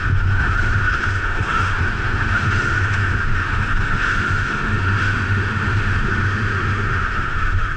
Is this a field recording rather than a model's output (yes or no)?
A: no